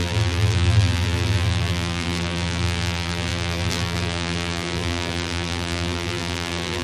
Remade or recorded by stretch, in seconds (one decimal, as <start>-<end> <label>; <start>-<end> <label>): 0.0-6.8 remade